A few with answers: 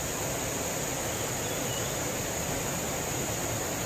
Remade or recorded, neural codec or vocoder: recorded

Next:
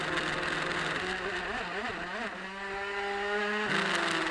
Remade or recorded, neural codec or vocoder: recorded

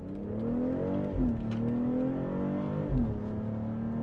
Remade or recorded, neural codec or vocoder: recorded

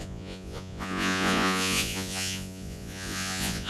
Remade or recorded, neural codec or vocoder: remade, vocoder, Vocos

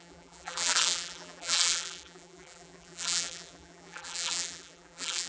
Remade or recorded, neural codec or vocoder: remade, vocoder, BigVGAN v2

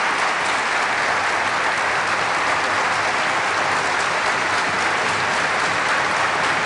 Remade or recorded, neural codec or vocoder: recorded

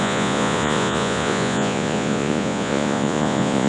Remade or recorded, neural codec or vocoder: remade, vocoder, Vocos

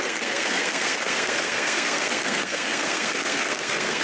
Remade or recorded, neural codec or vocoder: remade, codec, SNAC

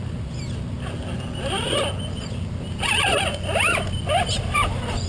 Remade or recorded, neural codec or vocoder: recorded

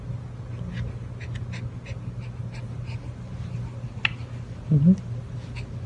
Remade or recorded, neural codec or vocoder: recorded